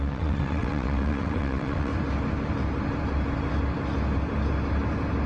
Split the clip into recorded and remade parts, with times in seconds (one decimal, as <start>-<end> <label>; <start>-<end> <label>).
0.0-1.9 remade; 1.9-5.3 recorded